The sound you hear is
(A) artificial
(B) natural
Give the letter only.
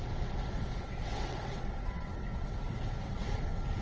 A